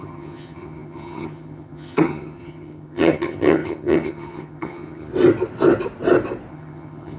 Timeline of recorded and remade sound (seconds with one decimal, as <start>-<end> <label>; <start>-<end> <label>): 0.0-5.1 remade; 5.1-6.5 recorded; 6.5-7.2 remade